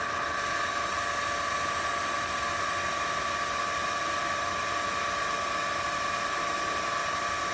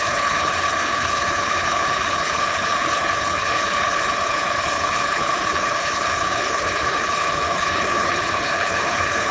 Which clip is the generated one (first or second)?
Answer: second